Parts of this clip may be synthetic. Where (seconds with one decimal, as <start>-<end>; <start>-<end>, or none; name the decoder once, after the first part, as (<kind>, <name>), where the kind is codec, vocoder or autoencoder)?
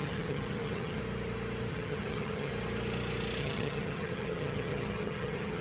0.0-1.0 (vocoder, HiFi-GAN); 1.7-2.5; 3.4-5.6